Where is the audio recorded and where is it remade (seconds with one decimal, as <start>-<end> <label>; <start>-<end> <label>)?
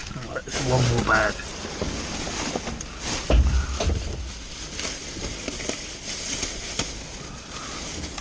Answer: 0.0-0.8 remade; 0.8-8.2 recorded